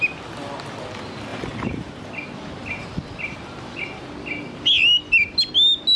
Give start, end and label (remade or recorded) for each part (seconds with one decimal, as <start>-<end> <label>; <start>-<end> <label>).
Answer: 0.0-1.3 recorded; 1.3-1.9 remade; 1.9-6.0 recorded